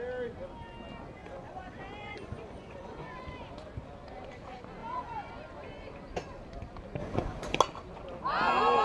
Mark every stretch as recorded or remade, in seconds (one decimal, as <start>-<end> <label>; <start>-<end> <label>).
0.0-1.2 recorded; 1.2-3.5 remade; 3.5-4.8 recorded; 4.8-5.3 remade; 5.3-7.0 recorded; 7.0-7.6 remade; 7.6-8.8 recorded